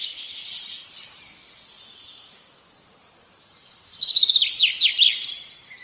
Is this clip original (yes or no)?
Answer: yes